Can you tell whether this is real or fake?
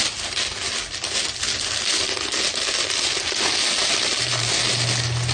real